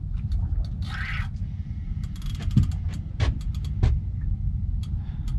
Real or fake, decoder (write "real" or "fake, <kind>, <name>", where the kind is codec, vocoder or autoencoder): real